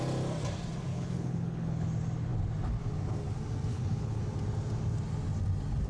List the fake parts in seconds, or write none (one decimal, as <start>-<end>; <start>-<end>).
0.9-1.9; 3.7-4.2